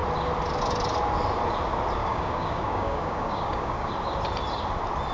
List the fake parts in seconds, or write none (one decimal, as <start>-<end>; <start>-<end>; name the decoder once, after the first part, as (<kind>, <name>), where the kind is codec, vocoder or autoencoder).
2.0-3.9 (codec, DAC)